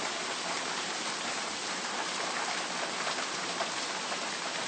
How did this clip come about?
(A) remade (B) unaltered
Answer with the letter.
B